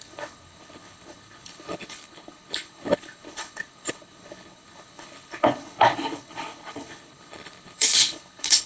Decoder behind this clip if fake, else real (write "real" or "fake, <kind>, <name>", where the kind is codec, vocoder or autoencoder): fake, codec, HILCodec